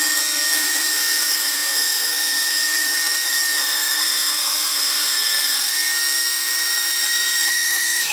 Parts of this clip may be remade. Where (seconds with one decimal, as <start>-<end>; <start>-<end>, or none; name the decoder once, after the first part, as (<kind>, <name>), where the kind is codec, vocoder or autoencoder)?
0.0-8.1 (codec, SNAC)